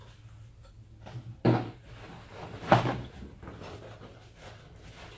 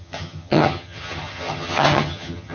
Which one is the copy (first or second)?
second